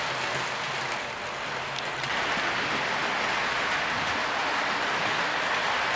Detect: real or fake real